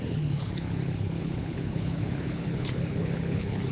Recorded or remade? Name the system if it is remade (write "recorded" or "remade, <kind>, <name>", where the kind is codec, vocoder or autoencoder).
remade, codec, HILCodec